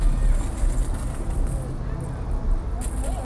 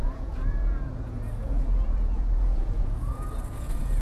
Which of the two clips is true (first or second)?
first